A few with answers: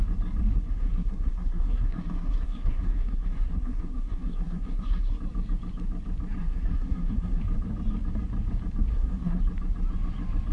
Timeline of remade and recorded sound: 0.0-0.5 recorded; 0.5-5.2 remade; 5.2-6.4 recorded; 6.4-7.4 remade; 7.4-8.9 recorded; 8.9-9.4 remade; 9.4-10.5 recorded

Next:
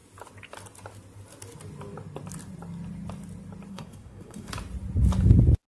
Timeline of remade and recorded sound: 0.0-3.7 recorded; 3.7-4.5 remade; 4.5-5.8 recorded

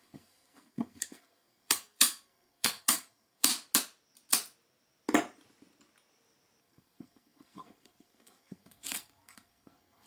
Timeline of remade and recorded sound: 0.0-3.5 remade; 3.5-6.6 recorded; 6.6-10.1 remade

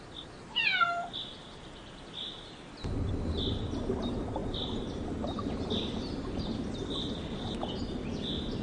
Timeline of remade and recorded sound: 0.0-8.6 recorded